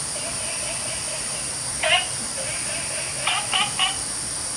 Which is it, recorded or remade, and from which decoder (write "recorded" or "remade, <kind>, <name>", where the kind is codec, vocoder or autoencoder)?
recorded